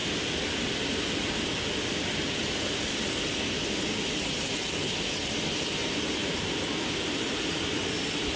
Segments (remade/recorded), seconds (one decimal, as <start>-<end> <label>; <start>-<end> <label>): 0.0-5.8 recorded; 5.8-6.5 remade; 6.5-8.4 recorded